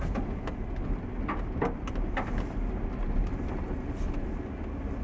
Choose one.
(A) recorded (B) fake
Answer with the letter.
A